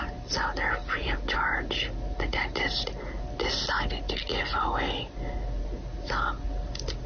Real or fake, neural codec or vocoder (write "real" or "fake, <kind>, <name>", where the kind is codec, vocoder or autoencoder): real